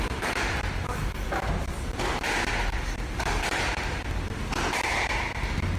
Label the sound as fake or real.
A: real